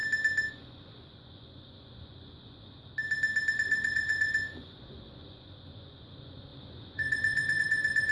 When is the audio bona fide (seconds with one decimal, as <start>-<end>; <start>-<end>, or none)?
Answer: 0.0-0.5; 2.9-3.5